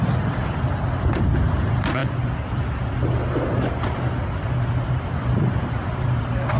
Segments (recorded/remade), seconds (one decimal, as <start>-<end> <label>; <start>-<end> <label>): 0.0-6.6 recorded